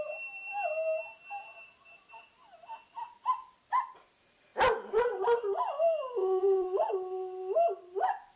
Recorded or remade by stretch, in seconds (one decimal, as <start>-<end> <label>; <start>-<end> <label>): 0.0-6.2 recorded; 6.2-6.9 remade; 6.9-8.4 recorded